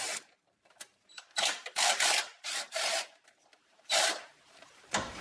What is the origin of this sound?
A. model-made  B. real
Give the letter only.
A